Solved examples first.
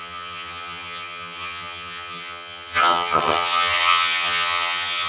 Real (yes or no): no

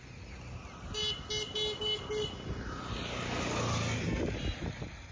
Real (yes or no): yes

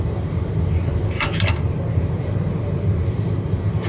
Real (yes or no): no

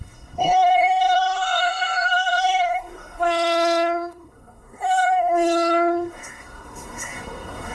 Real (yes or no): no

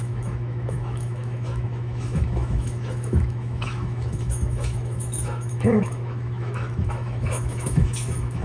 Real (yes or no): no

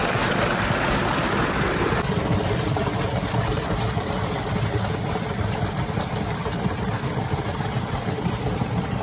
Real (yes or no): no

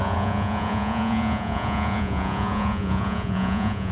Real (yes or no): no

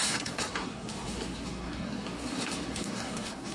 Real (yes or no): no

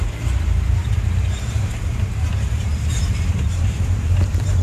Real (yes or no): no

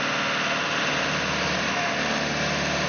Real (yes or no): yes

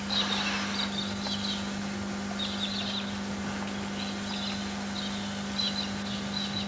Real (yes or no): yes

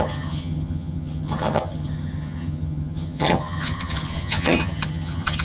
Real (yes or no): no